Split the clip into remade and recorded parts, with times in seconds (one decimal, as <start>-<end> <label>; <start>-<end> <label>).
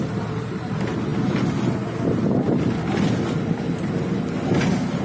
0.0-5.0 recorded